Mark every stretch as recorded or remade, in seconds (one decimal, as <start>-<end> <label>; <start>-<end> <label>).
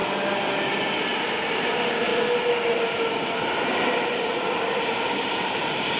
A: 0.0-0.5 recorded; 0.5-2.1 remade; 2.1-4.7 recorded; 4.7-6.0 remade